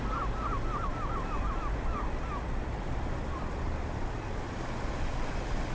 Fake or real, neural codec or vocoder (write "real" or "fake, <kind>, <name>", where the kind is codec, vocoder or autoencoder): real